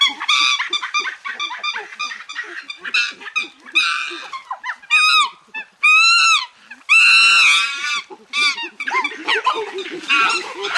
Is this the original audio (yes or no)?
yes